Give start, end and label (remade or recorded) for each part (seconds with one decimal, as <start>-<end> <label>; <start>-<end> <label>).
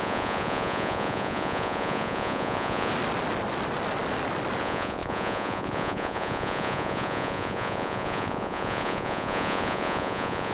0.0-2.9 remade; 2.9-4.6 recorded; 4.6-10.5 remade